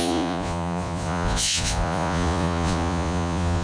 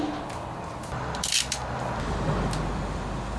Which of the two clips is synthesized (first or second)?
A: first